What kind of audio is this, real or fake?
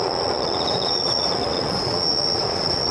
fake